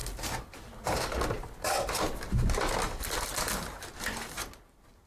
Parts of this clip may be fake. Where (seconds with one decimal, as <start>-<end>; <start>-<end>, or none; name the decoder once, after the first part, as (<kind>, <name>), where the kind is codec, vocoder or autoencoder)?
none